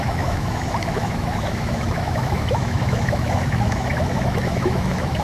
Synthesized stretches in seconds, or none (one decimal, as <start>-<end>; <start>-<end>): 0.0-5.2